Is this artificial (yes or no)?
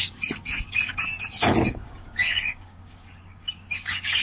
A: yes